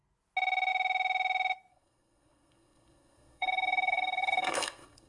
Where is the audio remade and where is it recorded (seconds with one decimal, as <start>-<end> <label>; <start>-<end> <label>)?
0.0-1.7 recorded; 1.7-5.1 remade